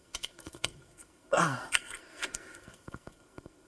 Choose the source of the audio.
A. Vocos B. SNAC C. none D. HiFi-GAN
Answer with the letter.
B